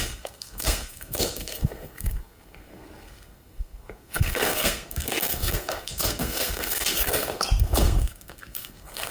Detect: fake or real fake